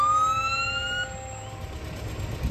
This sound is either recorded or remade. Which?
recorded